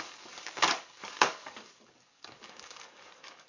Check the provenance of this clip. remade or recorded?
remade